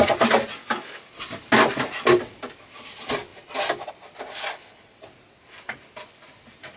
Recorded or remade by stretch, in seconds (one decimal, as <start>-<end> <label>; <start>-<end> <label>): 0.0-0.6 recorded; 0.6-1.1 remade; 1.1-6.8 recorded